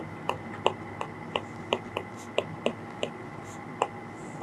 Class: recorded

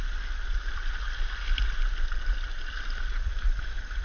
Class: remade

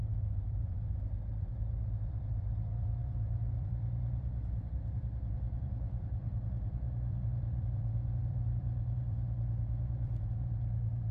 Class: remade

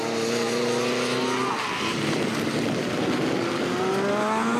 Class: recorded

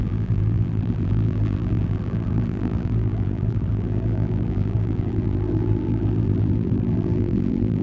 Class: remade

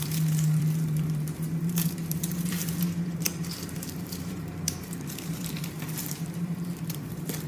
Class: remade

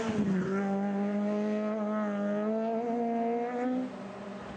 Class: recorded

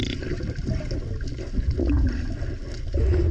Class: recorded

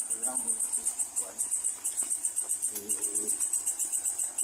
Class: recorded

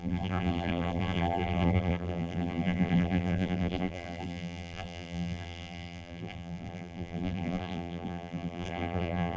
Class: remade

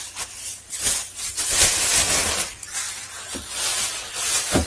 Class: recorded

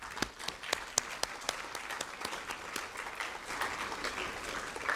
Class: recorded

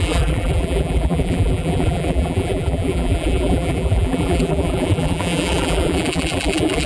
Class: remade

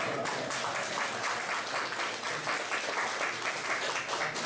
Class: recorded